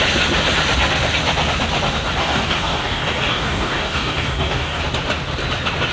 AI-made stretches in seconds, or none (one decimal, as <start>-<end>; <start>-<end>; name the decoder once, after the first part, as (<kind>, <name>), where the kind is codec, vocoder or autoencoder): 2.2-4.8 (codec, DAC)